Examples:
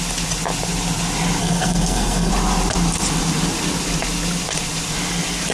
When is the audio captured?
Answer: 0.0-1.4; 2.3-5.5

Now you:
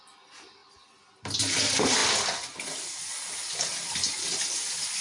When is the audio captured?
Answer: 0.0-5.0

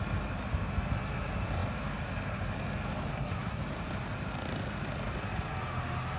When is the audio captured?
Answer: 0.0-3.1; 3.6-6.2

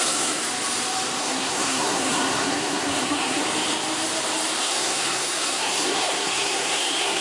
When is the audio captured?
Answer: 0.4-1.2; 3.4-4.6